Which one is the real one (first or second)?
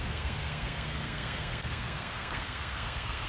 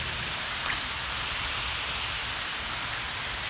second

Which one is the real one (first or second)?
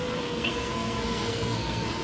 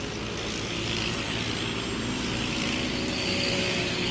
second